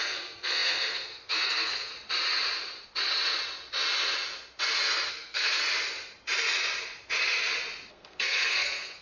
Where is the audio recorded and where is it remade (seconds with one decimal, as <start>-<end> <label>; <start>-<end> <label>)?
0.0-1.9 remade; 1.9-5.1 recorded; 5.1-5.6 remade; 5.6-7.9 recorded; 7.9-9.0 remade